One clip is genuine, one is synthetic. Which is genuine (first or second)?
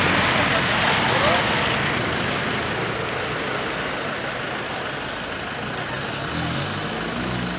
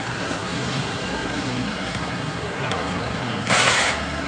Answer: first